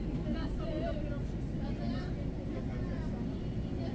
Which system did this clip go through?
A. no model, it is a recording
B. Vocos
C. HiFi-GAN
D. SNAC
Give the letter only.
A